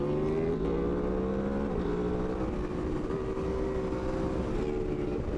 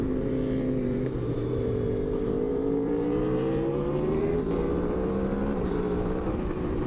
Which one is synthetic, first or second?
second